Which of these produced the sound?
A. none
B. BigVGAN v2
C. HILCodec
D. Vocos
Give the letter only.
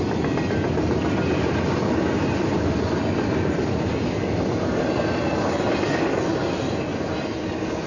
A